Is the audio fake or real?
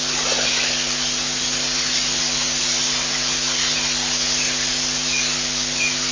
real